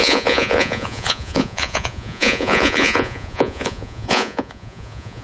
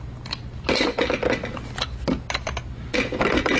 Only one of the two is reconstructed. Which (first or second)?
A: first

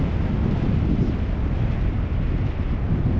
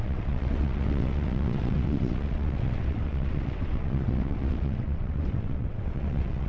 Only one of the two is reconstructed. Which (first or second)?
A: second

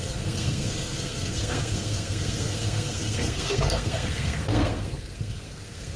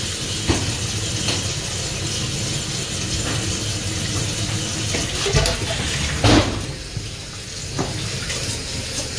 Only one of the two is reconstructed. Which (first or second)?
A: first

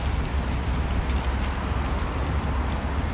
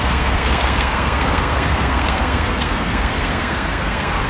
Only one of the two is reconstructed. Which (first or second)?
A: second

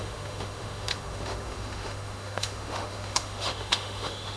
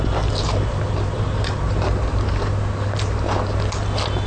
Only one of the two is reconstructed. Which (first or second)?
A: first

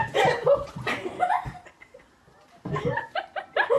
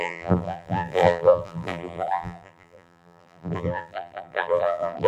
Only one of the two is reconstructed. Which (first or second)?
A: second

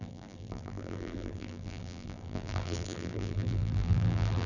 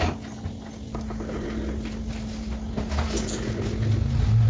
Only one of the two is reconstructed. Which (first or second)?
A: first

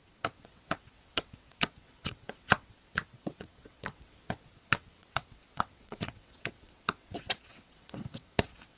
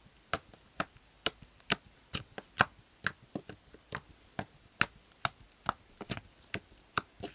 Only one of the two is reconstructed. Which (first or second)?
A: first